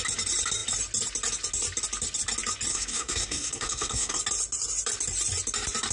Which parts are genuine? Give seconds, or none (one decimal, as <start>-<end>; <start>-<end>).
0.0-2.7; 4.2-5.9